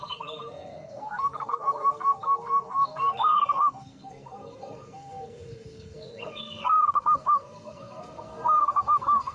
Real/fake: fake